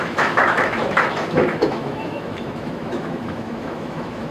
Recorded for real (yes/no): no